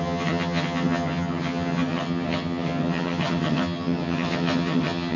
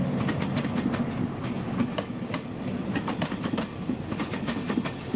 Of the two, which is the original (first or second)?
second